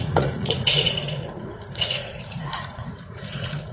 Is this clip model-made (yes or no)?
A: yes